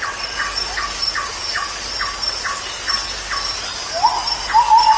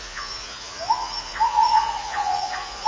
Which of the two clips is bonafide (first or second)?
first